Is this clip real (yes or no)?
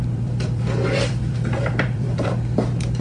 no